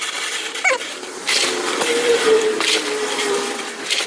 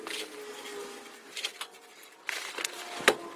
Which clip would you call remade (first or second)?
first